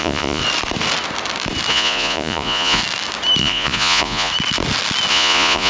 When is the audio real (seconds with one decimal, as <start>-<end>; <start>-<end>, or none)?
0.4-1.7; 2.8-3.4; 4.3-5.1